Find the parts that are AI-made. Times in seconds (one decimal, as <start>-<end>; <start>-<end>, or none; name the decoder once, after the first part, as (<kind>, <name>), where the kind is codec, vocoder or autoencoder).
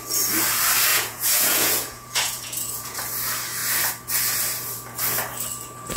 0.9-3.0 (vocoder, Vocos)